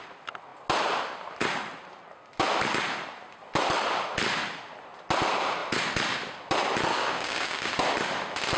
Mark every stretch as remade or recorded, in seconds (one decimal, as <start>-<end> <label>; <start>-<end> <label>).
0.0-6.9 recorded; 6.9-7.7 remade; 7.7-8.6 recorded